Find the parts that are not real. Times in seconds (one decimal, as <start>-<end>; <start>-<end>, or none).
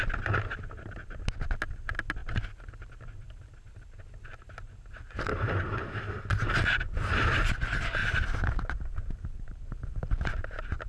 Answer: 5.3-6.0; 8.0-10.4